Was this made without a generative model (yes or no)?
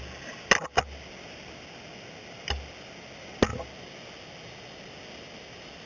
yes